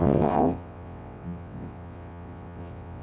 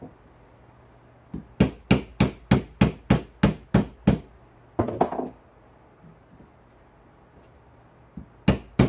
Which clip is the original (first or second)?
second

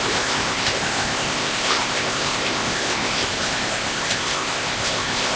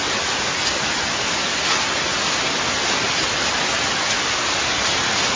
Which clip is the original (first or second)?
second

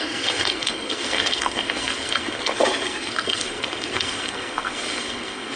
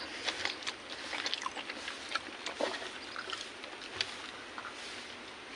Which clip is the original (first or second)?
second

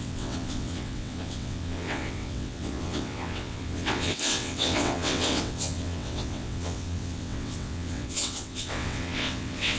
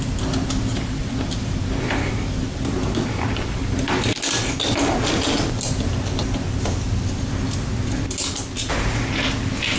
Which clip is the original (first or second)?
second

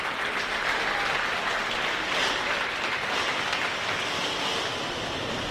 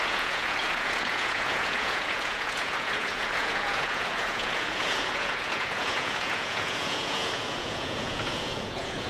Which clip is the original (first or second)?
first